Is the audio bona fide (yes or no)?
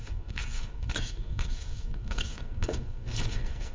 no